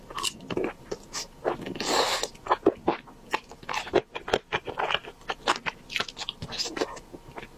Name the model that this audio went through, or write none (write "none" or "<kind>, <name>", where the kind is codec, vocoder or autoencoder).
none